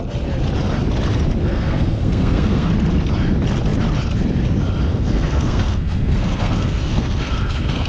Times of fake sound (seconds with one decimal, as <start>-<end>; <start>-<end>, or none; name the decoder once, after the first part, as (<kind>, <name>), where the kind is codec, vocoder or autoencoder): 1.4-2.7 (codec, SNAC); 4.9-7.9